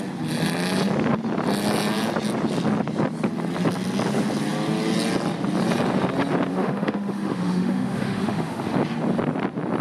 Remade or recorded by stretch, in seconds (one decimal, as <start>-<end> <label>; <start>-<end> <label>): 0.0-6.5 recorded; 6.5-8.7 remade; 8.7-9.8 recorded